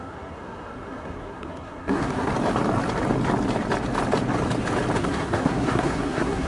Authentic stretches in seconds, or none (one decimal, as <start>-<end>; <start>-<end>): 2.3-5.0